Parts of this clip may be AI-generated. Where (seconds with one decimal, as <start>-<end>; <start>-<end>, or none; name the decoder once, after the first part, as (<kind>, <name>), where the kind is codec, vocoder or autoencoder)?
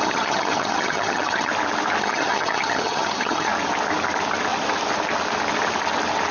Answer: 0.0-1.5 (vocoder, HiFi-GAN); 2.0-3.5